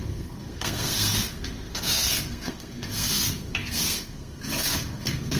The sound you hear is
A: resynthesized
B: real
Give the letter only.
A